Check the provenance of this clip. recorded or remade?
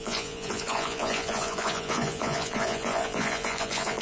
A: remade